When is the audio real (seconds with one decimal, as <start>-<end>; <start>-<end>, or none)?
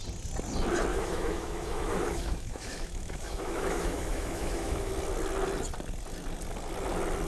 0.0-0.9; 4.9-7.3